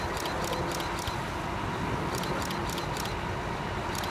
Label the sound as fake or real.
real